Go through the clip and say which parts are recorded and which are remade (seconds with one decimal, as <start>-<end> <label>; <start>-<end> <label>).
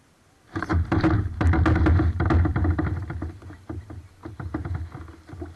0.0-5.6 recorded